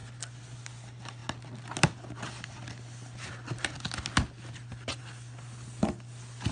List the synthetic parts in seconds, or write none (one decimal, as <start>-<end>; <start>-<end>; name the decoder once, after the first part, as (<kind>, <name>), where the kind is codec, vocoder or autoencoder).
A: none

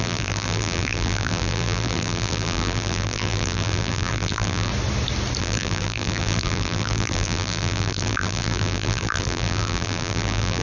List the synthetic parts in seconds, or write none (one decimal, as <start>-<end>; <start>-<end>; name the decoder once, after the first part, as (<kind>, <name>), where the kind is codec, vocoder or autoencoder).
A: 0.0-4.7 (vocoder, BigVGAN v2); 5.4-10.6